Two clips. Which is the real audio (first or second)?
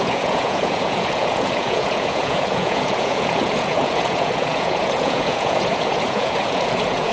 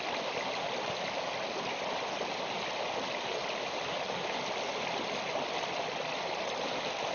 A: second